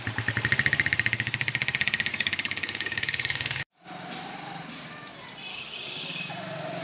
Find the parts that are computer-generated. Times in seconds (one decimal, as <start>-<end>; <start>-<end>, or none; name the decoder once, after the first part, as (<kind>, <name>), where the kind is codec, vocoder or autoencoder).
2.1-3.6 (codec, DAC); 5.5-6.3

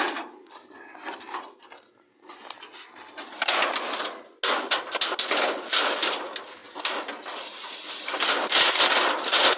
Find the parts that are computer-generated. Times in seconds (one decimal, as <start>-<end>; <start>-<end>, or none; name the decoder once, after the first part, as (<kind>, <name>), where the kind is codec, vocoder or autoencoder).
none

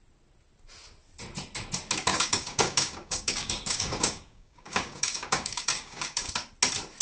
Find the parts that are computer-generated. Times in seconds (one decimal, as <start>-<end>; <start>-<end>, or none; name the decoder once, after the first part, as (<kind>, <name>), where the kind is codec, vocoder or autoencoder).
2.1-6.3 (codec, DAC)

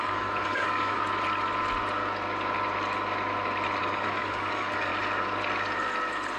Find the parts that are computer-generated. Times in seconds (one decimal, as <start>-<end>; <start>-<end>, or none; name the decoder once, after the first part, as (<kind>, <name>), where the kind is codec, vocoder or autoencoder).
0.0-1.0 (codec, DAC); 3.8-4.9

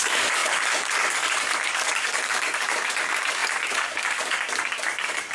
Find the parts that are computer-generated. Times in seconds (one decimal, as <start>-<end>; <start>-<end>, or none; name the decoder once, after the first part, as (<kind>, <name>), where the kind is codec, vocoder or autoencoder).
0.0-5.3 (codec, DAC)